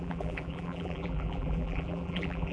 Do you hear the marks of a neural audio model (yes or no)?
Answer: yes